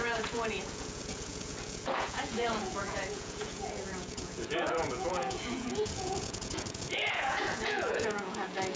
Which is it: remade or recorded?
remade